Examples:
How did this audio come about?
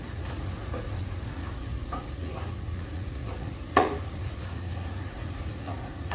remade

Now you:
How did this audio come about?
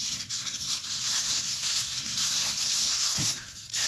remade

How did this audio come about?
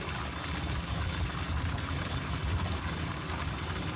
recorded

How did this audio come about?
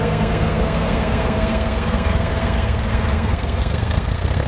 remade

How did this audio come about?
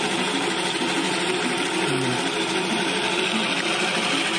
recorded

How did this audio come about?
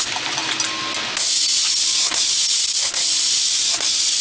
recorded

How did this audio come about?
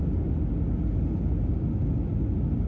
recorded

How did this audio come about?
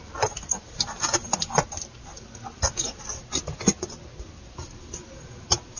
remade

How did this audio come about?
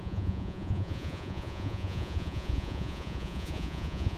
remade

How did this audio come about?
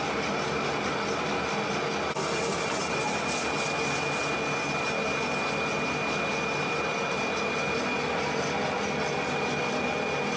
recorded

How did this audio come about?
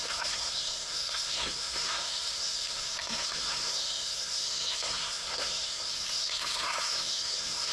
remade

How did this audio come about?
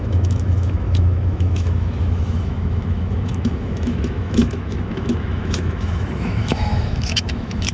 remade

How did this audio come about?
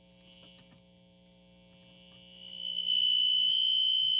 recorded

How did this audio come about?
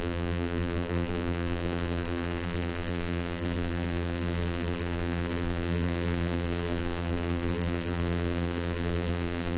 remade